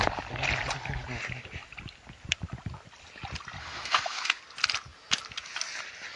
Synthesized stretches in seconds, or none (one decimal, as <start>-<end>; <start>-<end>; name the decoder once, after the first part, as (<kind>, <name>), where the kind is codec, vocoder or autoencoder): 3.6-4.4 (autoencoder, DAC-VAE)